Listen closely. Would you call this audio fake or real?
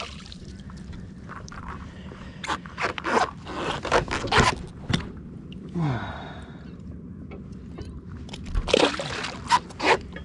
real